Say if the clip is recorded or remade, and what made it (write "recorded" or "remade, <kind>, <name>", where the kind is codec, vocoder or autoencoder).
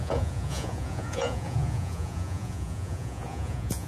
remade, vocoder, Vocos